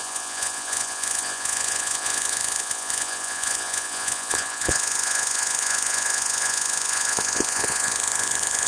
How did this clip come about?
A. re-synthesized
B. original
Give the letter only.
A